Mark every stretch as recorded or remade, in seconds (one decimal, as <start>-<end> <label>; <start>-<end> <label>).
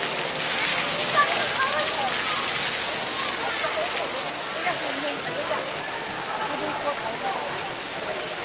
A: 0.0-0.7 recorded; 0.7-1.4 remade; 1.4-4.6 recorded; 4.6-5.9 remade; 5.9-8.4 recorded